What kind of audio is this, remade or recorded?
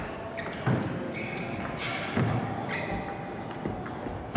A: recorded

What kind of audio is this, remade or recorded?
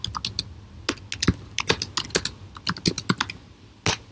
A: recorded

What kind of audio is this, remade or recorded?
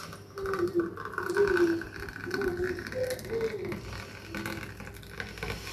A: recorded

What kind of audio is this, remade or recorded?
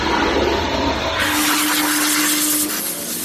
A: recorded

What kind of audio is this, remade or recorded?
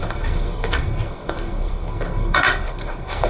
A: remade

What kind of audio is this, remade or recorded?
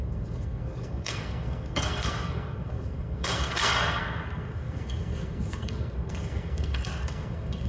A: remade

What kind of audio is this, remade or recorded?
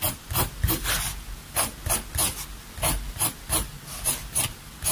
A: recorded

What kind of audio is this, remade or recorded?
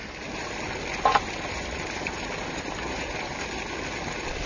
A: recorded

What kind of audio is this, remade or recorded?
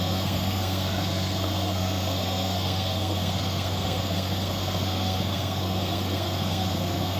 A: remade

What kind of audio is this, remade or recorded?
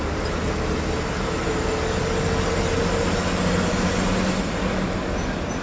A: recorded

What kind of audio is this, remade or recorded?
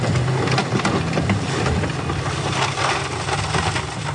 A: recorded